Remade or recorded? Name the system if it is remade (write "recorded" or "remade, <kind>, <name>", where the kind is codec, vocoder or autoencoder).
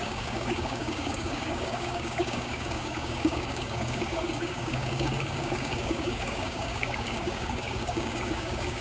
remade, codec, DAC